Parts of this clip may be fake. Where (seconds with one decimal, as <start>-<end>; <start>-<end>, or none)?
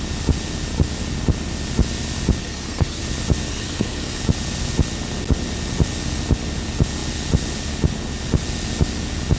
2.4-3.0; 3.5-4.2